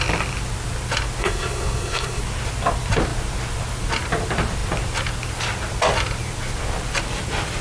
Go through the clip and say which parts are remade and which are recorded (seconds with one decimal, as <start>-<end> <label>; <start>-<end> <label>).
0.0-1.2 recorded; 1.2-2.2 remade; 2.2-7.6 recorded